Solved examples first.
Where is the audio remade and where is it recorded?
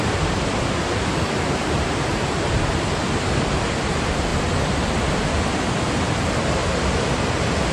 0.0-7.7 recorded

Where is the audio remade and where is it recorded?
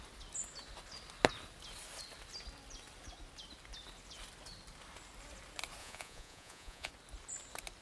0.0-5.8 recorded; 5.8-6.9 remade; 6.9-7.8 recorded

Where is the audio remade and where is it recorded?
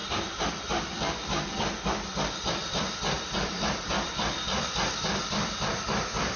0.0-1.8 remade; 1.8-2.6 recorded; 2.6-5.7 remade; 5.7-6.4 recorded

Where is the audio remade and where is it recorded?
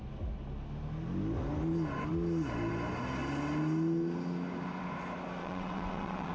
0.0-5.4 recorded; 5.4-6.3 remade